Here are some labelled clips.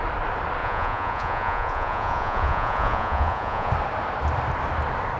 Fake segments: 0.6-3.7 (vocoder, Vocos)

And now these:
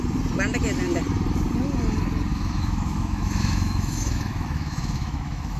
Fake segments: 2.3-5.6 (autoencoder, DAC-VAE)

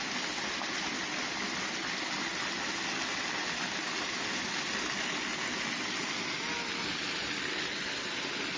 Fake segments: none

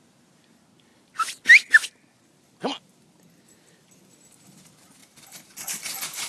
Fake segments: 5.0-6.3 (vocoder, BigVGAN v2)

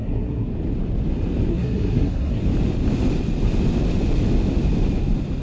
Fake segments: 0.0-0.5 (codec, SNAC); 1.5-2.4

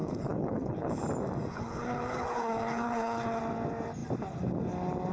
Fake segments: 0.0-1.0 (codec, HILCodec); 1.5-3.4